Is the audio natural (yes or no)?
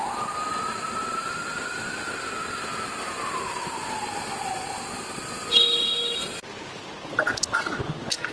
yes